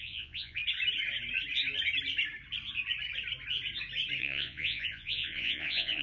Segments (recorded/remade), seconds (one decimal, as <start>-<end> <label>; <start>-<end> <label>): 0.0-0.6 remade; 0.6-4.2 recorded; 4.2-6.0 remade